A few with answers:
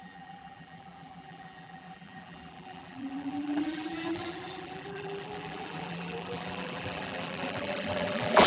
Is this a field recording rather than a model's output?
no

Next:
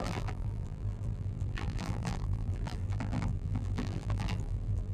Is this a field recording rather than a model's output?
no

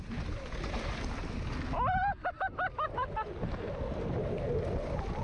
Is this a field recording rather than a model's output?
yes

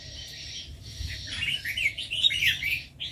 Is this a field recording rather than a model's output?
no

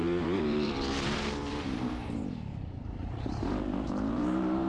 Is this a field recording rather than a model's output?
no